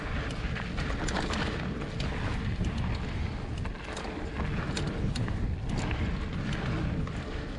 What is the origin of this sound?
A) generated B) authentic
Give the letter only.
B